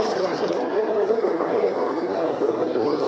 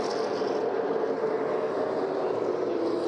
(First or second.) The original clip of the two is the second